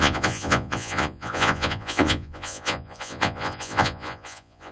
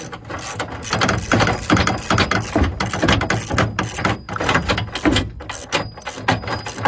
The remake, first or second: first